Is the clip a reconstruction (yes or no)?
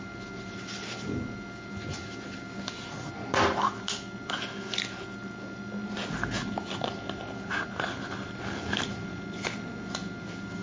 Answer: no